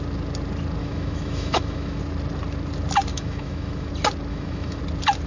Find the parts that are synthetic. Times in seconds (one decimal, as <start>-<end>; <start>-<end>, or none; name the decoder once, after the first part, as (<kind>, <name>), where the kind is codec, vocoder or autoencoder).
0.8-2.0 (autoencoder, DAC-VAE); 3.1-3.9; 4.3-4.8